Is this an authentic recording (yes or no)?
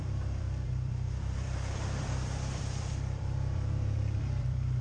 no